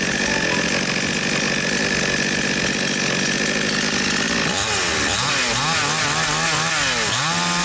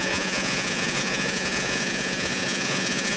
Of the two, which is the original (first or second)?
first